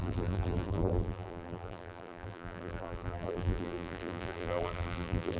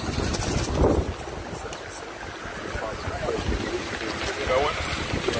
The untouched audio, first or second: second